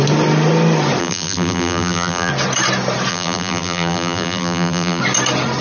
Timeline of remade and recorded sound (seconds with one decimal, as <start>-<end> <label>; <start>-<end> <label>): 0.0-1.0 recorded; 1.0-2.3 remade; 2.3-3.1 recorded; 3.1-5.0 remade; 5.0-5.6 recorded